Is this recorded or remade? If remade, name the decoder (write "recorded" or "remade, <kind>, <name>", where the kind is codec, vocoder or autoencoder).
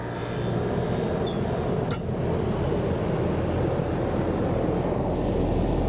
recorded